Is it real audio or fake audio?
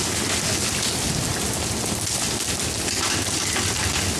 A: real